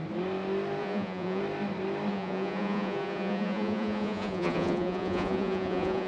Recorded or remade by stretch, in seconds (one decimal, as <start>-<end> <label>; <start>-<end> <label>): 0.0-0.8 recorded; 0.8-1.4 remade; 1.4-2.1 recorded; 2.1-6.1 remade